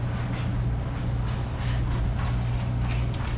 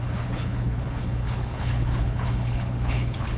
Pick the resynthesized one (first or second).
second